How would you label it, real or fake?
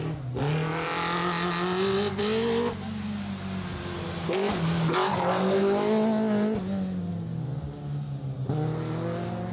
real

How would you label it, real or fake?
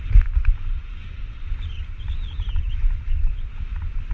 fake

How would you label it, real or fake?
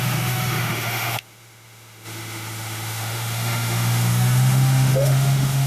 fake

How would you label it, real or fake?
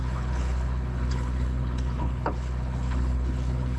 fake